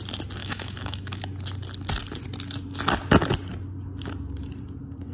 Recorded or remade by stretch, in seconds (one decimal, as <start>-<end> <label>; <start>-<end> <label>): 0.0-0.4 recorded; 0.4-1.2 remade; 1.2-5.1 recorded